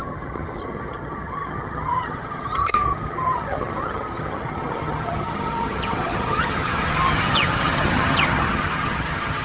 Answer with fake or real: fake